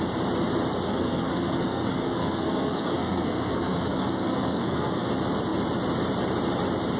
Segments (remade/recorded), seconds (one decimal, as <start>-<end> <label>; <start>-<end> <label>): 0.0-0.9 recorded; 0.9-5.1 remade; 5.1-7.0 recorded